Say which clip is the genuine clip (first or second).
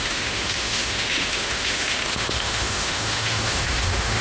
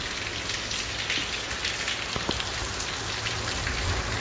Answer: second